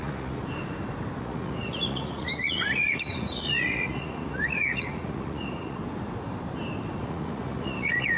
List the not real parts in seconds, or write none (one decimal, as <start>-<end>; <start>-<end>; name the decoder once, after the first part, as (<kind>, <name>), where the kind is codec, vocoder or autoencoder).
0.0-0.4 (vocoder, Vocos); 1.2-5.8; 7.0-8.2